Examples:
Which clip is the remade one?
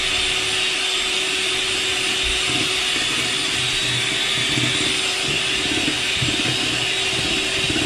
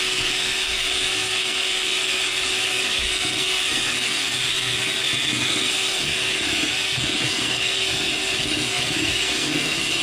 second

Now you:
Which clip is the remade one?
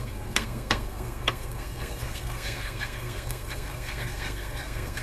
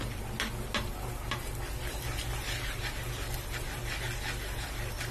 first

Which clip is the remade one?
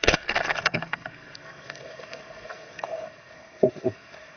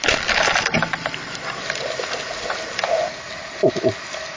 first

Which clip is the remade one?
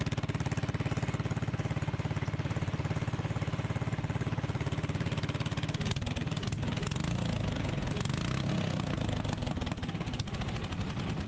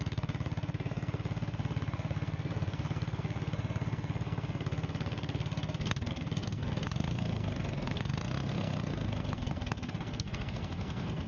second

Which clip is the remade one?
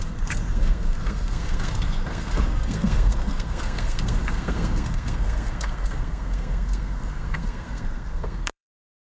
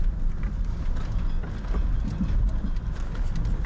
first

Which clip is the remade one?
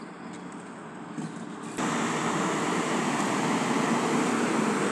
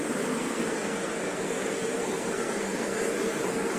second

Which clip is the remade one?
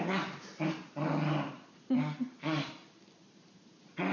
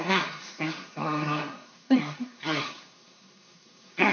second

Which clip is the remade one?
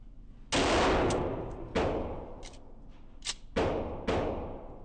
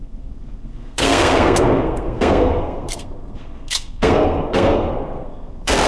second